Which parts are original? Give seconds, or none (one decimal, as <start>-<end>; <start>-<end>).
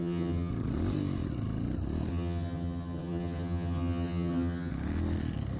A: 0.5-2.1; 4.7-5.6